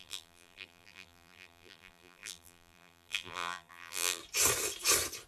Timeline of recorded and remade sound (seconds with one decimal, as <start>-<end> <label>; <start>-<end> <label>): 0.0-4.2 remade; 4.2-5.3 recorded